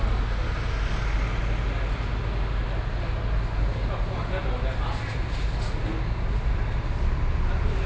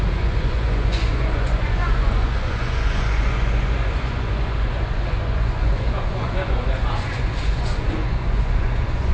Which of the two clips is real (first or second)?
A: first